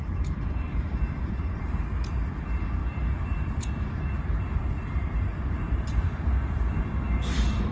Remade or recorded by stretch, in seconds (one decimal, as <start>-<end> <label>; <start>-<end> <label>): 0.0-0.7 recorded; 0.7-1.4 remade; 1.4-2.8 recorded; 2.8-6.8 remade; 6.8-7.7 recorded